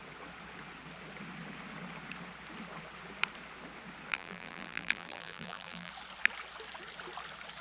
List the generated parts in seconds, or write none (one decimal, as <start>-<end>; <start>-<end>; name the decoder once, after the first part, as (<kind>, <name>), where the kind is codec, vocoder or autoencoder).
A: 4.1-5.9 (vocoder, BigVGAN v2)